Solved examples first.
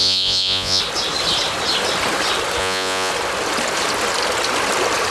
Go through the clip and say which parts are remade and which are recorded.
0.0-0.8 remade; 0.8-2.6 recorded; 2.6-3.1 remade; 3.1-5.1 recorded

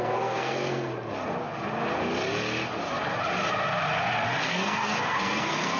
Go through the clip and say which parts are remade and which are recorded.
0.0-0.9 remade; 0.9-4.4 recorded; 4.4-5.8 remade

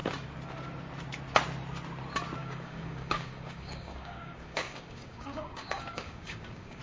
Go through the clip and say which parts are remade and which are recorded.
0.0-2.4 recorded; 2.4-6.8 remade

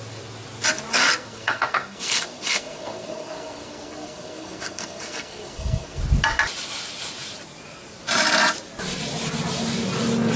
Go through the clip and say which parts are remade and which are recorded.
0.0-0.9 recorded; 0.9-6.0 remade; 6.0-10.4 recorded

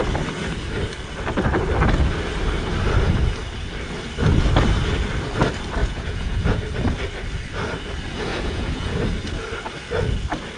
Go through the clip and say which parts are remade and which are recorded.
0.0-5.8 recorded; 5.8-6.6 remade; 6.6-8.3 recorded; 8.3-9.0 remade; 9.0-10.6 recorded

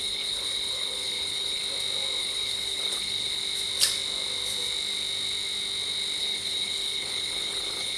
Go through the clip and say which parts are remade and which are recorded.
0.0-1.6 remade; 1.6-2.2 recorded; 2.2-3.4 remade; 3.4-6.2 recorded; 6.2-8.0 remade

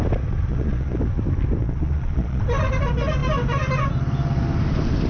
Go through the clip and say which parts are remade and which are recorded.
0.0-0.5 recorded; 0.5-1.0 remade; 1.0-1.6 recorded; 1.6-2.4 remade; 2.4-5.1 recorded